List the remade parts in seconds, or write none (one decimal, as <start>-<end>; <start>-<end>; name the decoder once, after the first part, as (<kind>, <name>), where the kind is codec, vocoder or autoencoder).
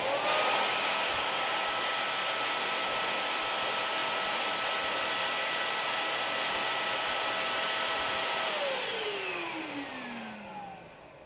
none